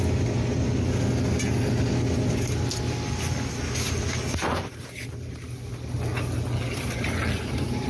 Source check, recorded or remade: recorded